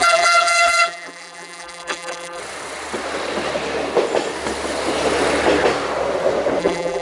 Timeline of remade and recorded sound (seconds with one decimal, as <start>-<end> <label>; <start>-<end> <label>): 0.0-2.4 remade; 2.4-6.6 recorded; 6.6-7.0 remade